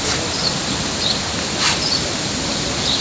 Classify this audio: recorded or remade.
recorded